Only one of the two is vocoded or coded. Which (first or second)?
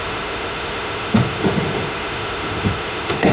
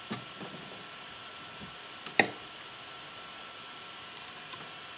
first